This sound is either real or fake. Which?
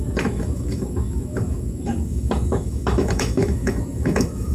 fake